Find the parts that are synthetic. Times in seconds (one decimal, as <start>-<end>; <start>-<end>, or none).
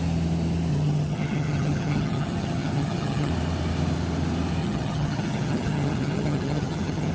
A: 0.7-3.3; 4.6-7.1